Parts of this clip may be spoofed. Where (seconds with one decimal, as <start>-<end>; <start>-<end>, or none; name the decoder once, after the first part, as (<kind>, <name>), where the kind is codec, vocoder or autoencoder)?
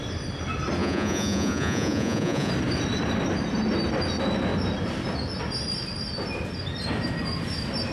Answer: 0.8-2.5 (vocoder, Vocos)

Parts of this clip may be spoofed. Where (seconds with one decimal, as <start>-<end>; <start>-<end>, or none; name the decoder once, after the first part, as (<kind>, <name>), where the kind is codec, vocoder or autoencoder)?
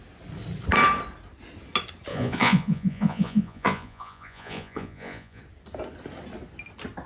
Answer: 2.1-5.4 (vocoder, Vocos)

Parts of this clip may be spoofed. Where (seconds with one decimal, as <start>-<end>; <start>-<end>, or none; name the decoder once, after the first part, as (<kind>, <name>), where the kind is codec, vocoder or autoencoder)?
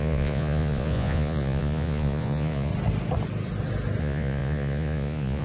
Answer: 0.0-2.7 (vocoder, Vocos); 4.0-5.4